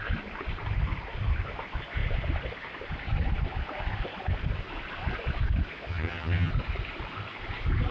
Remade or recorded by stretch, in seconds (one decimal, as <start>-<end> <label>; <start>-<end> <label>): 0.0-5.9 recorded; 5.9-6.5 remade; 6.5-7.9 recorded